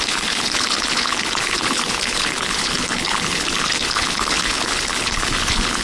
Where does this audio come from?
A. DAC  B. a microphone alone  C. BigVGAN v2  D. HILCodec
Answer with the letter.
D